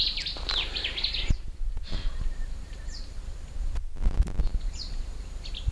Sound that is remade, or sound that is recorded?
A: recorded